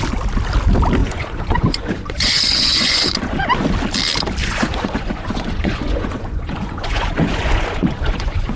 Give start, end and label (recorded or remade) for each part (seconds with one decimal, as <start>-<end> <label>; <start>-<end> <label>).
0.0-1.0 recorded; 1.0-3.5 remade; 3.5-4.4 recorded; 4.4-8.6 remade